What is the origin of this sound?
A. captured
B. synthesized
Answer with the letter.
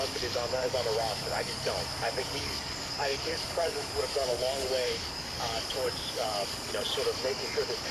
B